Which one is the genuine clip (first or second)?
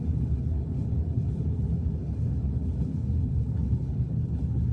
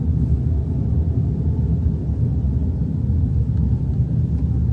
second